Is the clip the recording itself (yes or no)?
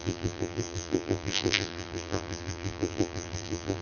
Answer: no